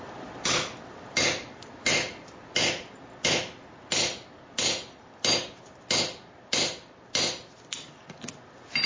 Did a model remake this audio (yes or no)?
no